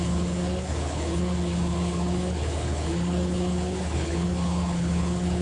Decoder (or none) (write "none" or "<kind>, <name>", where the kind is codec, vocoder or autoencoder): codec, HILCodec